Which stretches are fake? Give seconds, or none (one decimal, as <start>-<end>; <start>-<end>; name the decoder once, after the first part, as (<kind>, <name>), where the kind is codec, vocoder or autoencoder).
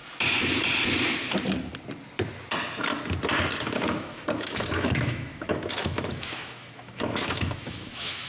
4.0-8.3 (autoencoder, DAC-VAE)